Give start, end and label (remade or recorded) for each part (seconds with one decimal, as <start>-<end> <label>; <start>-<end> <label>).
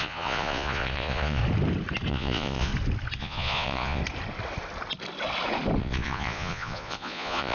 0.0-1.4 remade; 1.4-2.1 recorded; 2.1-2.7 remade; 2.7-3.2 recorded; 3.2-4.0 remade; 4.0-5.8 recorded; 5.8-7.5 remade